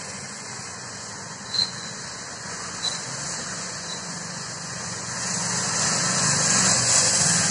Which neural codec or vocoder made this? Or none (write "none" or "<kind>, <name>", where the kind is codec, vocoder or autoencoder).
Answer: vocoder, Vocos